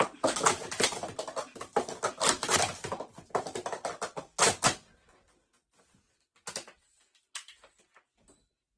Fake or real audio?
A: real